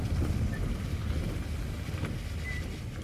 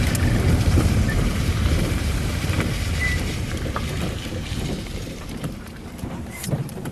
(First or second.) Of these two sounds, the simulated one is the second